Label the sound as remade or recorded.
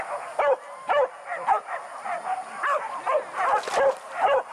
recorded